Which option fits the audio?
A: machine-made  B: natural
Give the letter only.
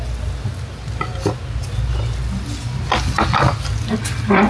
B